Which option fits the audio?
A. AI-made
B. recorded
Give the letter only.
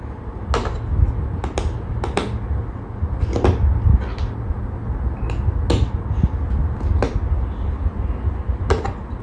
B